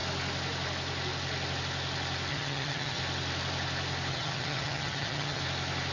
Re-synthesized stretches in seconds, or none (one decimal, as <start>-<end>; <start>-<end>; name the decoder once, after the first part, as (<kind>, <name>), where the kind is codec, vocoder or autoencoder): 2.3-3.0 (vocoder, HiFi-GAN); 4.1-5.4